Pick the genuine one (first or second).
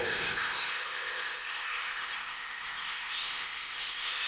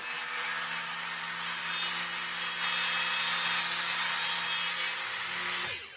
second